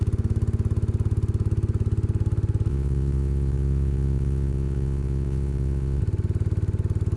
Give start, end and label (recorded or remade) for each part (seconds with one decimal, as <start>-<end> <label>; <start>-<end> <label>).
0.0-2.7 recorded; 2.7-6.0 remade; 6.0-7.2 recorded